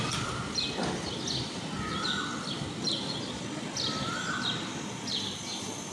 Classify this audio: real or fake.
real